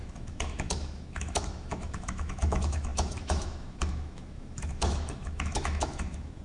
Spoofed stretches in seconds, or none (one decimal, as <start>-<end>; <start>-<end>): 0.0-6.4